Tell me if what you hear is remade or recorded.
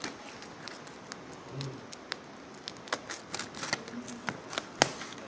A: recorded